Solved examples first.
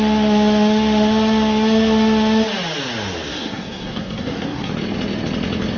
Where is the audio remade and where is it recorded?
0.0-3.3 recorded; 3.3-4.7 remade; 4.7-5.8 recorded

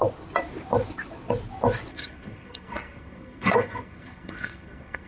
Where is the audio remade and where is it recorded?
0.0-1.9 recorded; 1.9-5.1 remade

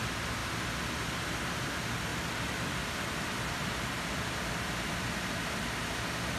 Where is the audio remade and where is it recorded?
0.0-2.1 recorded; 2.1-5.9 remade; 5.9-6.4 recorded